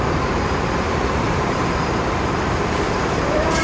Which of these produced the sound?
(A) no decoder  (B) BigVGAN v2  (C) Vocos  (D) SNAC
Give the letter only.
B